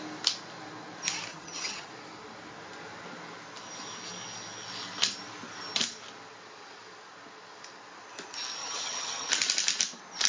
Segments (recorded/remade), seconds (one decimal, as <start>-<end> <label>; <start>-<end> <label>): 0.0-1.3 recorded; 1.3-1.9 remade; 1.9-8.6 recorded; 8.6-9.3 remade; 9.3-10.3 recorded

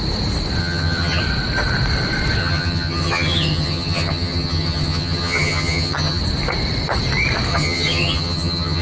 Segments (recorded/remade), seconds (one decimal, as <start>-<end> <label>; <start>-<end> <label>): 0.0-0.6 recorded; 0.6-1.2 remade; 1.2-2.4 recorded; 2.4-6.2 remade; 6.2-7.5 recorded; 7.5-8.8 remade

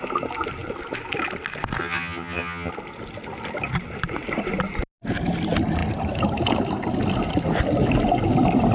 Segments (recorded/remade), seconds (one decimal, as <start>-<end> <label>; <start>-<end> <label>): 0.0-1.8 recorded; 1.8-2.7 remade; 2.7-8.7 recorded

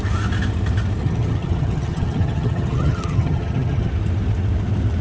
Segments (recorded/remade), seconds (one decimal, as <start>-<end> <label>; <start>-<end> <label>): 0.0-1.0 recorded; 1.0-3.9 remade; 3.9-5.0 recorded